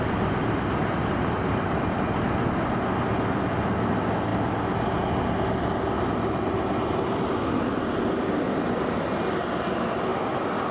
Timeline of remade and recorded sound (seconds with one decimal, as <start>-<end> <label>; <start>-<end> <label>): 0.0-0.4 recorded; 0.4-1.7 remade; 1.7-10.7 recorded